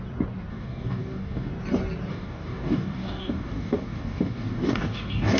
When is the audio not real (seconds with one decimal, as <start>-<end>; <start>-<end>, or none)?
0.5-1.5; 2.1-5.4